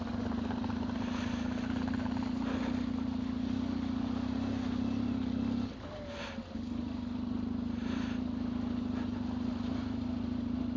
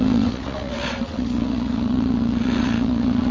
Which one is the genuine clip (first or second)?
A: first